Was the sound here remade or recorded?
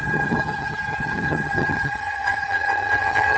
remade